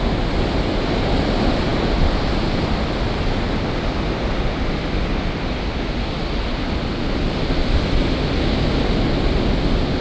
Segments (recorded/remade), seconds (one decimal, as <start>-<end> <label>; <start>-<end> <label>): 0.0-10.0 recorded